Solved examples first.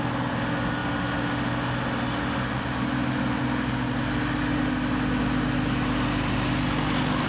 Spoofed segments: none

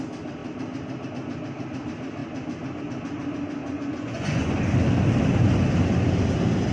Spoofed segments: 3.6-4.6